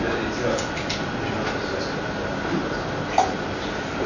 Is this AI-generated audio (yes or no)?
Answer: no